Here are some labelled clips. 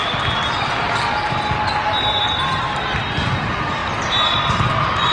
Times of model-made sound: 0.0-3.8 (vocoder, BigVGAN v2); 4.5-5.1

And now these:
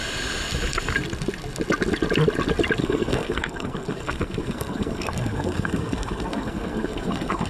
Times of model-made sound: 2.8-7.5 (codec, SNAC)

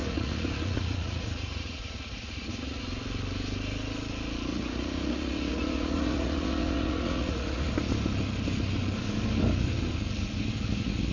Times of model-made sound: 0.0-2.8 (vocoder, Vocos); 4.5-7.7

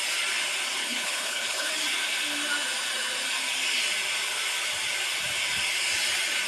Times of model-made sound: 0.8-1.7 (codec, HILCodec)

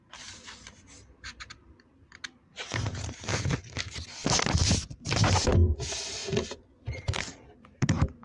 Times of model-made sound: 0.0-3.3 (vocoder, BigVGAN v2); 3.8-4.2; 5.0-6.2; 6.8-8.2

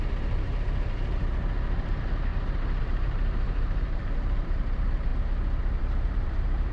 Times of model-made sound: 0.0-2.3 (vocoder, BigVGAN v2); 2.8-5.1; 5.8-6.7